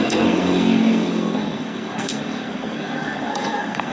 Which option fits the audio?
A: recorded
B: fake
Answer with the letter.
B